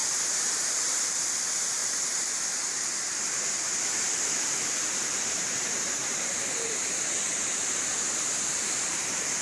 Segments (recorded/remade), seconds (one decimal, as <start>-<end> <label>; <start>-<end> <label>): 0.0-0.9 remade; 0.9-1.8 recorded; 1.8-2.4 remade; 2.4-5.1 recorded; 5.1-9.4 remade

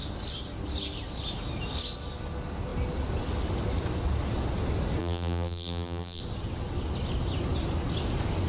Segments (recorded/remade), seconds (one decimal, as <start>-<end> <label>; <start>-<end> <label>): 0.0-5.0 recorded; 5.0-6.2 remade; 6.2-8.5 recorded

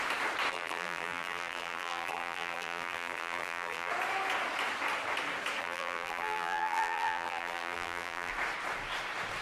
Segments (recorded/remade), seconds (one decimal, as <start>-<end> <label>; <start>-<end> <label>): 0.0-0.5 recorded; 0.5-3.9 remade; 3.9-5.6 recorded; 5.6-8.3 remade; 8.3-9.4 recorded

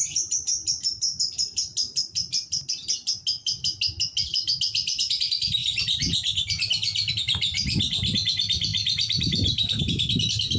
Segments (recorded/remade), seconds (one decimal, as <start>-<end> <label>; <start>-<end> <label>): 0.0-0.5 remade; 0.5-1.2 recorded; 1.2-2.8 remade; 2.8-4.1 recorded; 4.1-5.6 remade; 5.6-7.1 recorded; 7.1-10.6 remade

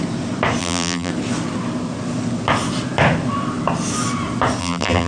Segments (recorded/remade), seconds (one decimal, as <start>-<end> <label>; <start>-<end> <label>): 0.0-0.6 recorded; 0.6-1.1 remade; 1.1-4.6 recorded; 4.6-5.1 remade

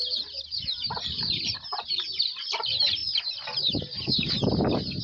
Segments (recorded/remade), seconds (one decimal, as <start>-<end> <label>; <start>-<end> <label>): 0.0-5.0 remade

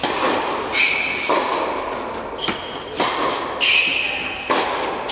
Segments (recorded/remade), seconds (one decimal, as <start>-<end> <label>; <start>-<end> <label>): 0.0-5.1 recorded

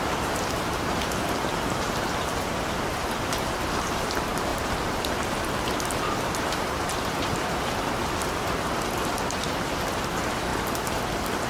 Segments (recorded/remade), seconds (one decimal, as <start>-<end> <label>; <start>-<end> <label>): 0.0-4.5 remade; 4.5-6.2 recorded; 6.2-6.9 remade; 6.9-10.1 recorded; 10.1-10.5 remade; 10.5-11.5 recorded